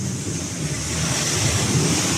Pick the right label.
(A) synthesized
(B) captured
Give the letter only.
B